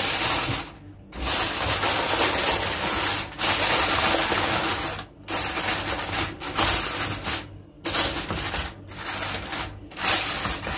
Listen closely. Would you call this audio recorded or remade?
recorded